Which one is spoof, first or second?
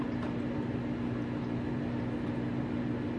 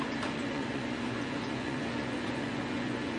second